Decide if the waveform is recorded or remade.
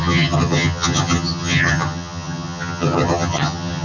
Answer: remade